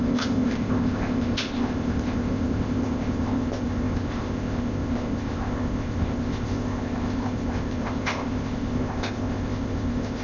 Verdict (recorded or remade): remade